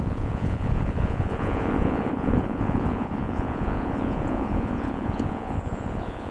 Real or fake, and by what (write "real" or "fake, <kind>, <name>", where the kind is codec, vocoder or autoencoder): fake, vocoder, Vocos